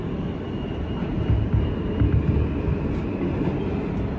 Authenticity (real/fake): real